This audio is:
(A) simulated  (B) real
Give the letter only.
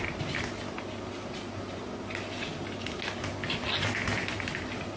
B